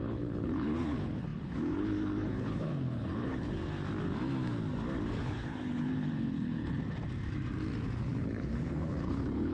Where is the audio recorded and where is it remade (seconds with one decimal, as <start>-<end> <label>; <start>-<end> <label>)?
0.0-3.3 remade; 3.3-5.2 recorded; 5.2-6.8 remade; 6.8-8.0 recorded; 8.0-9.5 remade